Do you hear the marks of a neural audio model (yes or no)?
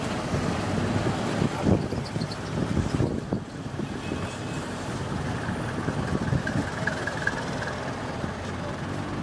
no